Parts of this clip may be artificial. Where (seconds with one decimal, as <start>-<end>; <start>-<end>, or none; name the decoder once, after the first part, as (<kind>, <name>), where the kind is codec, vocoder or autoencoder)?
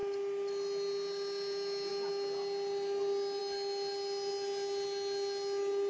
none